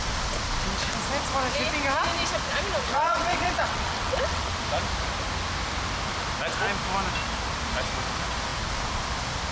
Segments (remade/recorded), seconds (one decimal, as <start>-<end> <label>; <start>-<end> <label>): 0.0-2.9 recorded; 2.9-4.5 remade; 4.5-9.5 recorded